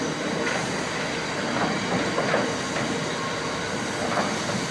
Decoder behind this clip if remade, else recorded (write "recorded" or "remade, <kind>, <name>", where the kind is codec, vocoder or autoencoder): recorded